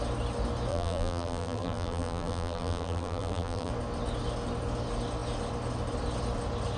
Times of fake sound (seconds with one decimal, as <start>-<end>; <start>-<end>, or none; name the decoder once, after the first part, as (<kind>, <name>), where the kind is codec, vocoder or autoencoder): 0.7-3.7 (vocoder, BigVGAN v2)